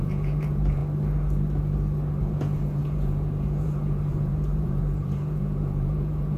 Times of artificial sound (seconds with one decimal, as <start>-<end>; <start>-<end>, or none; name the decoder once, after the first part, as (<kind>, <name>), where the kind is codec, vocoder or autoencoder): 0.0-0.8 (vocoder, Vocos); 2.2-6.4